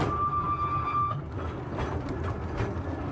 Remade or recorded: recorded